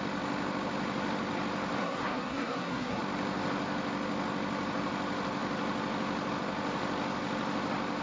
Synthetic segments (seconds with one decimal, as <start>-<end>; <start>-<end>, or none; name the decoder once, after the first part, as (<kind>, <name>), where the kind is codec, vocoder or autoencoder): 1.8-3.0 (codec, SNAC)